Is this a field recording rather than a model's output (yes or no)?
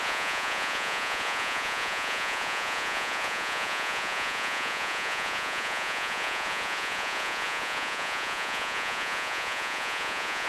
no